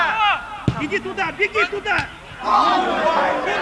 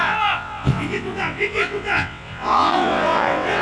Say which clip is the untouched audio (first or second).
first